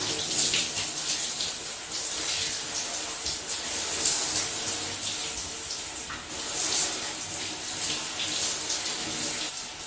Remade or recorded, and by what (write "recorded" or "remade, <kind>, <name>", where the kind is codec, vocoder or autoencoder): recorded